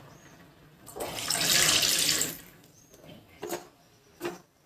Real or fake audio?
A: real